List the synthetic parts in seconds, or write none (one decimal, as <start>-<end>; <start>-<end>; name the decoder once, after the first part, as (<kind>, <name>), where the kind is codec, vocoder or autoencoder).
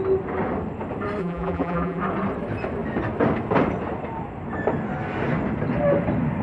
1.2-2.0 (vocoder, BigVGAN v2)